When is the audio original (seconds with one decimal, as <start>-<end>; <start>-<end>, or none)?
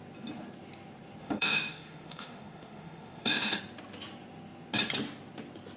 0.0-1.2; 3.6-5.8